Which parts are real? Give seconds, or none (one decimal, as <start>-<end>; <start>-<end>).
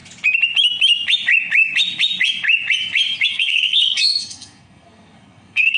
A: 0.0-3.3